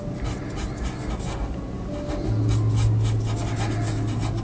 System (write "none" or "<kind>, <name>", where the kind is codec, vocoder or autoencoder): none